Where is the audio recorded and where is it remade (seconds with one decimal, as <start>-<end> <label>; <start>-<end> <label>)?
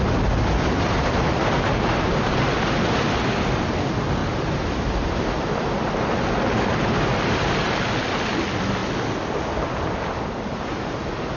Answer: 0.0-4.2 recorded; 4.2-5.1 remade; 5.1-11.4 recorded